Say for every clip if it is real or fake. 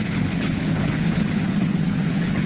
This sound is fake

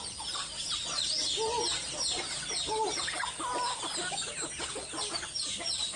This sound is real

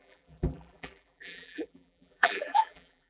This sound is fake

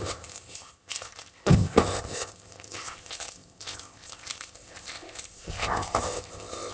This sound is fake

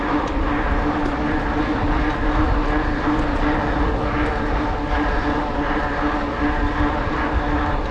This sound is real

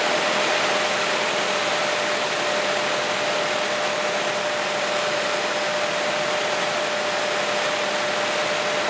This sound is real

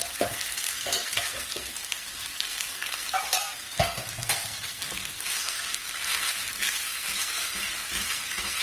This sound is fake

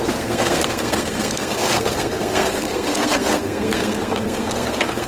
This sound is fake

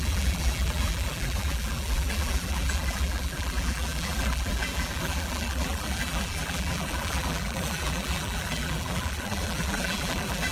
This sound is fake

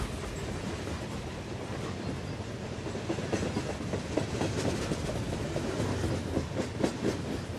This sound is real